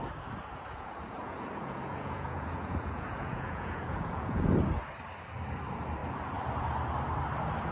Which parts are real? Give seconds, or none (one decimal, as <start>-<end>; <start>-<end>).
0.0-0.5; 4.5-7.7